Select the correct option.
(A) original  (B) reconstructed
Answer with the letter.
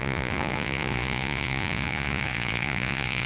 B